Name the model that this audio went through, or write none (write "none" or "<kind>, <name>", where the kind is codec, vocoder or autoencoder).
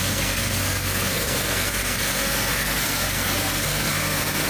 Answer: codec, SNAC